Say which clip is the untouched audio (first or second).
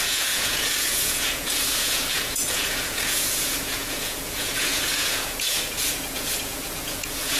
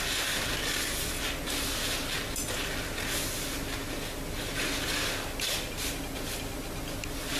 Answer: second